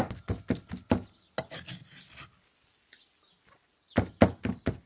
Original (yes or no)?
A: yes